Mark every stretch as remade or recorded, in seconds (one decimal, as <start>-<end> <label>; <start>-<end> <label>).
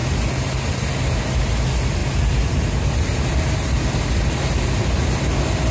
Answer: 0.0-2.0 recorded; 2.0-3.4 remade; 3.4-5.7 recorded